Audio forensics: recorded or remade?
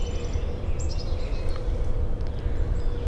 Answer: recorded